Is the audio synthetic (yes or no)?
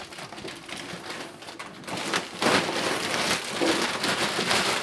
no